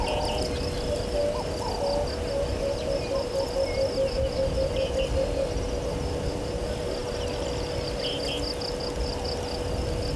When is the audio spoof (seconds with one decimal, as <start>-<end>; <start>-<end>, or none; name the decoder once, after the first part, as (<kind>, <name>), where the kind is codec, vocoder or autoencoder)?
none

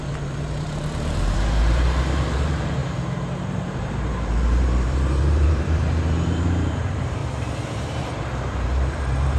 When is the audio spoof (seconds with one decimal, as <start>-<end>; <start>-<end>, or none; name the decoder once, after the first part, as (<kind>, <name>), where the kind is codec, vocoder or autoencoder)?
0.0-9.4 (vocoder, BigVGAN v2)